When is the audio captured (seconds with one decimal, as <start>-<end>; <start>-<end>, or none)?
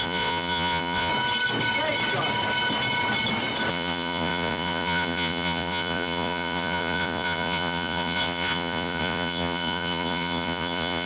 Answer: 1.1-3.7